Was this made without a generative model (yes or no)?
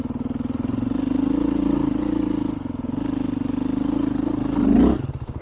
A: yes